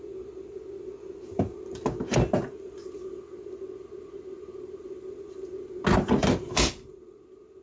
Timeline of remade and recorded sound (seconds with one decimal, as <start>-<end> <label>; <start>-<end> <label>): 0.0-6.2 recorded; 6.2-6.7 remade; 6.7-7.6 recorded